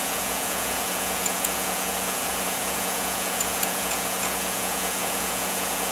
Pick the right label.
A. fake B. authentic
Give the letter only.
A